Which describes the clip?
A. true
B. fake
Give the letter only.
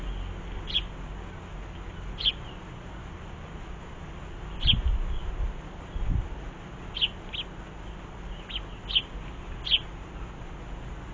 A